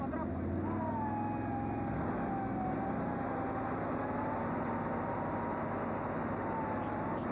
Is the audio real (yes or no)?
yes